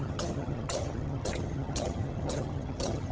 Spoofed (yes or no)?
yes